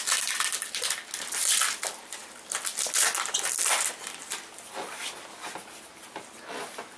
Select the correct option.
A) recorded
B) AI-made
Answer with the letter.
A